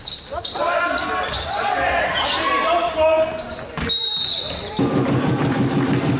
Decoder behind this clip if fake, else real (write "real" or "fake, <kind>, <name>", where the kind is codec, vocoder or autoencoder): real